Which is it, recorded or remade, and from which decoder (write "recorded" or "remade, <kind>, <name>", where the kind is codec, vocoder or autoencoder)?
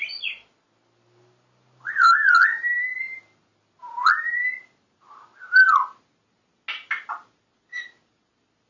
recorded